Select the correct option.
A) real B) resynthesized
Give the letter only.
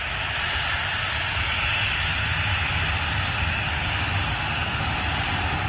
A